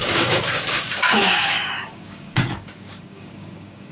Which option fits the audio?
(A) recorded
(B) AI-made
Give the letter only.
B